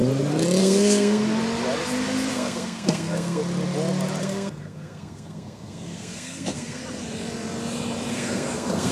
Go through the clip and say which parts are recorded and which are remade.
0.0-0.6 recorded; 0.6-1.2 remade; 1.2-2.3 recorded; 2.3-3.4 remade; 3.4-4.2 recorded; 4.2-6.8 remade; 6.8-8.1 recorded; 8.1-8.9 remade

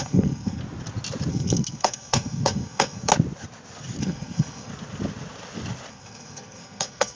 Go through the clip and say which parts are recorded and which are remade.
0.0-0.6 remade; 0.6-1.3 recorded; 1.3-3.1 remade; 3.1-4.0 recorded; 4.0-4.7 remade; 4.7-5.9 recorded; 5.9-7.2 remade